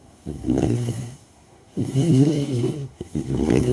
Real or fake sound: fake